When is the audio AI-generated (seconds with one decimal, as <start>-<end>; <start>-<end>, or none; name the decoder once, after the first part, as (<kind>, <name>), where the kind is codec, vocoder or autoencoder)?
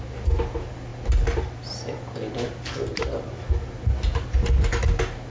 none